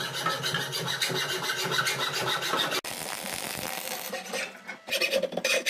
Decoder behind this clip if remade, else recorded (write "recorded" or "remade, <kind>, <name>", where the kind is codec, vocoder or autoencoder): recorded